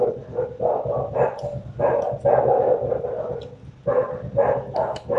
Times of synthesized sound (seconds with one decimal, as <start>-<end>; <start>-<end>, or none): none